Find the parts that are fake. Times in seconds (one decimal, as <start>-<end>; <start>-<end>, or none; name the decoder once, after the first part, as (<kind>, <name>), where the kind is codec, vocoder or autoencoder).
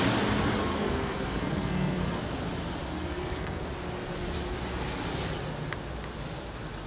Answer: 0.7-2.2 (codec, SNAC); 2.9-3.6